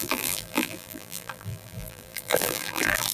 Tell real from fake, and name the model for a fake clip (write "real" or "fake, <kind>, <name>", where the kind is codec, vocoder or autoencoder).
fake, vocoder, BigVGAN v2